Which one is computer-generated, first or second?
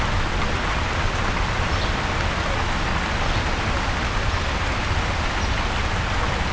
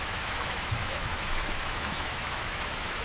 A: second